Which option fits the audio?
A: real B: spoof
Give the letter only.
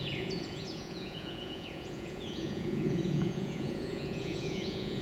B